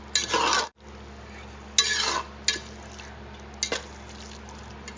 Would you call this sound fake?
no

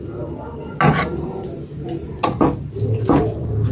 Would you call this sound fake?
no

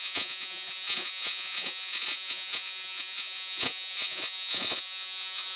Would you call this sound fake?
yes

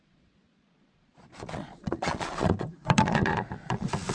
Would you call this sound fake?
yes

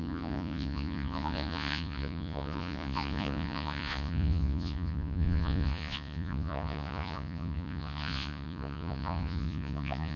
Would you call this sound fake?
yes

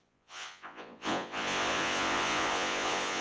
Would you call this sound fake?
yes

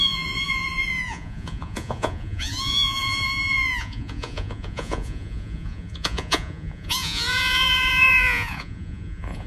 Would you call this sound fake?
yes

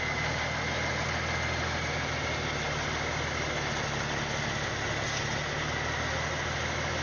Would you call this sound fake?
no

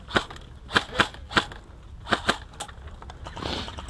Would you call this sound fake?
no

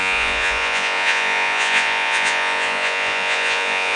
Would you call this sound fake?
yes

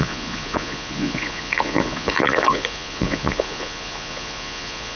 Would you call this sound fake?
yes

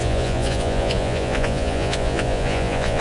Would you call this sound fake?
yes